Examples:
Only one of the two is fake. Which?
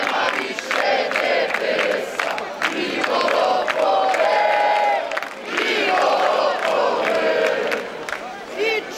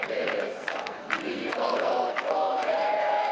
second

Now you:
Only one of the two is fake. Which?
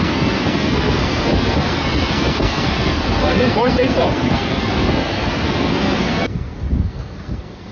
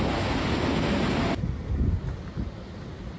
first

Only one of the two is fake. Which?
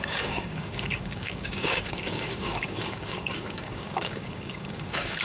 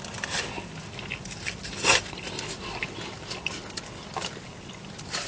first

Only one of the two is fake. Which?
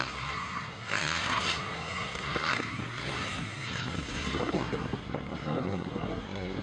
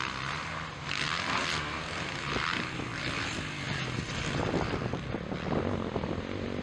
first